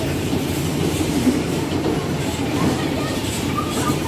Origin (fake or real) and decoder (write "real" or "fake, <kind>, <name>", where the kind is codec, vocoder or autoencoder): fake, vocoder, BigVGAN v2